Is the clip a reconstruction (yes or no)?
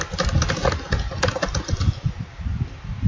no